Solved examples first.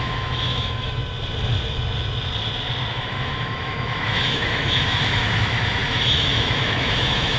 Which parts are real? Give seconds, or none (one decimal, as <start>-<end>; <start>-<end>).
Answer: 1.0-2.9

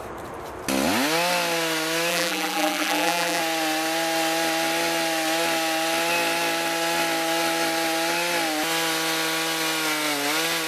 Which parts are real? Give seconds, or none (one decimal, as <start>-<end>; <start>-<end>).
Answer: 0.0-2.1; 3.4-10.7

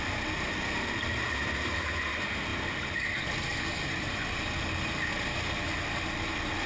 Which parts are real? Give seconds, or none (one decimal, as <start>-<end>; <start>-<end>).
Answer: 0.0-6.7

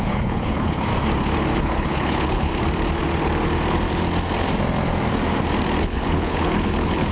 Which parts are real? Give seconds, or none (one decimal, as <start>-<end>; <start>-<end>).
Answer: 0.9-1.6; 2.5-5.8